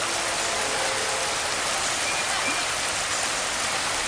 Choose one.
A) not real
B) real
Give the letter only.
B